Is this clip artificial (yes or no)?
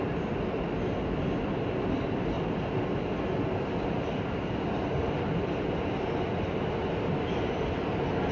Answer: no